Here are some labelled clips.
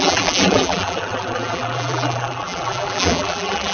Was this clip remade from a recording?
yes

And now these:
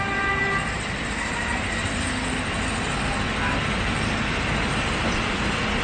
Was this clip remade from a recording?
no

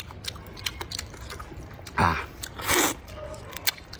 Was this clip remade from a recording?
no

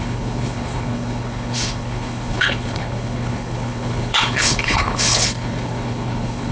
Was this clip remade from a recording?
yes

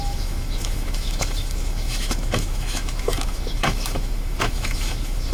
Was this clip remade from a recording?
yes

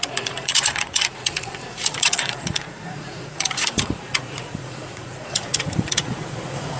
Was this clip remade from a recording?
yes